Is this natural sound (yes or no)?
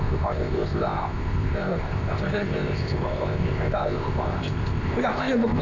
no